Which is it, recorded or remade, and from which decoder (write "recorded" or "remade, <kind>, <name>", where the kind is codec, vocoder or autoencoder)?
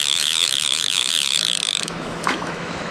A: remade, autoencoder, DAC-VAE